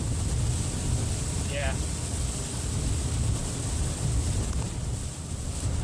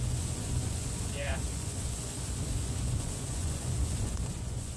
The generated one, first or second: second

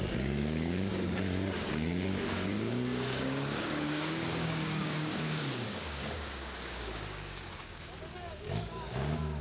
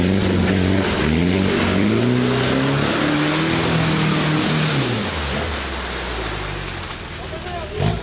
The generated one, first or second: first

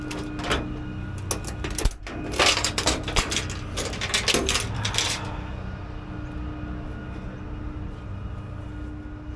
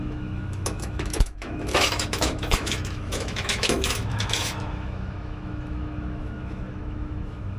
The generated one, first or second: second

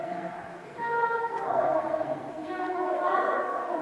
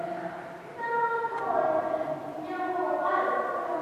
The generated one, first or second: first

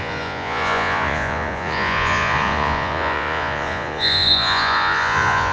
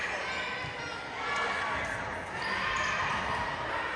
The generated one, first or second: first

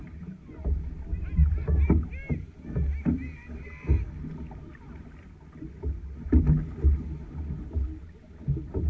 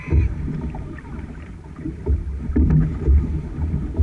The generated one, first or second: second